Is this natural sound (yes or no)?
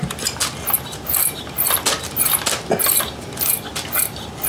yes